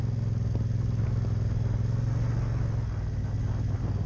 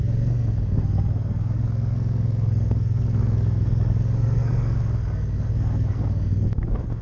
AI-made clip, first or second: second